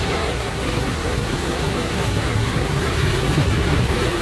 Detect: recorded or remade remade